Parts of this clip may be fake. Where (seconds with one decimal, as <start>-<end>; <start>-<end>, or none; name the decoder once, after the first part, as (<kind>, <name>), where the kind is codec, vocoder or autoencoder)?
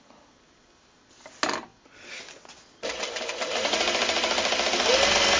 none